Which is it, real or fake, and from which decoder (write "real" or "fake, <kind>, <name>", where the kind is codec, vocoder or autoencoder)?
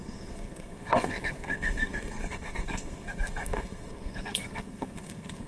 fake, codec, SNAC